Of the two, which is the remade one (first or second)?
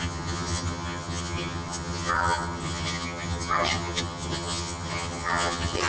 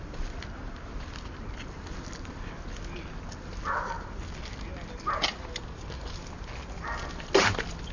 first